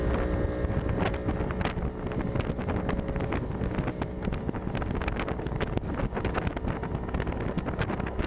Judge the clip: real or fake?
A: real